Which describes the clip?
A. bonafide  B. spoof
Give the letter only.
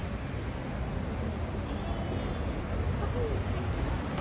A